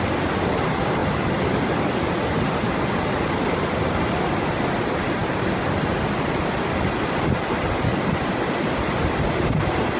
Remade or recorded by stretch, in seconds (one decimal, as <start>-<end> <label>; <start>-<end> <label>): 0.0-10.0 recorded